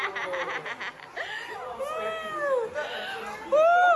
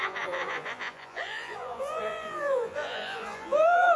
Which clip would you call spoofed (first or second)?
second